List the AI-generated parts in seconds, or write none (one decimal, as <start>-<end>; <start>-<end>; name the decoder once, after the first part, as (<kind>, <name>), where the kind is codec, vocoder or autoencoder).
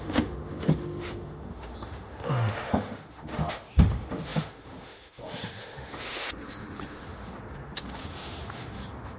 0.0-9.2 (autoencoder, DAC-VAE)